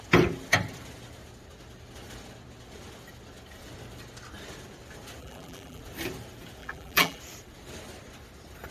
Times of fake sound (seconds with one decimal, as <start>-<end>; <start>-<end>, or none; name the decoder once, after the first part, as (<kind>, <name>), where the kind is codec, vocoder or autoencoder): 5.2-5.8 (vocoder, BigVGAN v2); 6.6-7.2

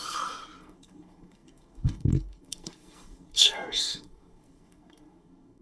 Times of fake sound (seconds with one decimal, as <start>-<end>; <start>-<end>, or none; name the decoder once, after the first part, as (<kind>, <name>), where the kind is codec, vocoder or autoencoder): 0.0-5.6 (codec, SNAC)

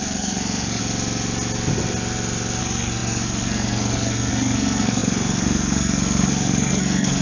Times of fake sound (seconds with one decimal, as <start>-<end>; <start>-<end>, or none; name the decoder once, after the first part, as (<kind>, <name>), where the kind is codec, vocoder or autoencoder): 0.0-0.8 (codec, SNAC); 2.6-7.2